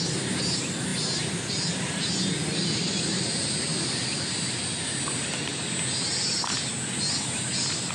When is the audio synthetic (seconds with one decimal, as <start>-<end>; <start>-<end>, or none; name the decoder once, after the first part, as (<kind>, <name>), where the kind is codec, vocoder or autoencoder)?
none